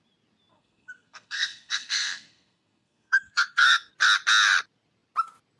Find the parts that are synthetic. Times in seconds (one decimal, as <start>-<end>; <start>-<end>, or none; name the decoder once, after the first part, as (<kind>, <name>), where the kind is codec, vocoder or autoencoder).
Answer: 0.5-3.9 (codec, SNAC)